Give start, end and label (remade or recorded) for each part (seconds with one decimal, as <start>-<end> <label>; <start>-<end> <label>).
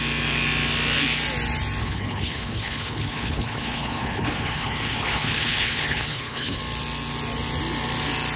0.0-1.8 recorded; 1.8-6.6 remade; 6.6-8.4 recorded